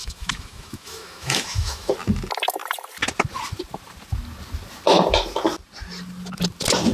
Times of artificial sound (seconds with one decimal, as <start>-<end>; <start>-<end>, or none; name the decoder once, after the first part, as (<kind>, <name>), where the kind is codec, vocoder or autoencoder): 0.0-1.9 (autoencoder, DAC-VAE)